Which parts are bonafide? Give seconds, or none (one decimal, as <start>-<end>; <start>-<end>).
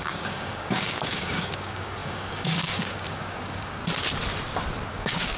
3.8-4.9